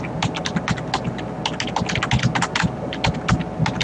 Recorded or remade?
recorded